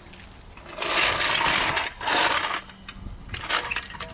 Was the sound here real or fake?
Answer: real